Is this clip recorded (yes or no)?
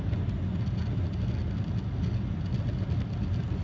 yes